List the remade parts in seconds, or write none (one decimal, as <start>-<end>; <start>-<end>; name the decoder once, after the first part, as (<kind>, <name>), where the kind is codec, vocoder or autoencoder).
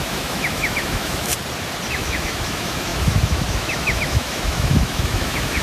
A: 0.0-1.3 (autoencoder, DAC-VAE); 1.9-5.6